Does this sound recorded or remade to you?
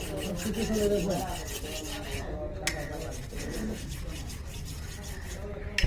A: recorded